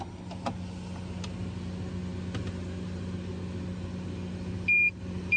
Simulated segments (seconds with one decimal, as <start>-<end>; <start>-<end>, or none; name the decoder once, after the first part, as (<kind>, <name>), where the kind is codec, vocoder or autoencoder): none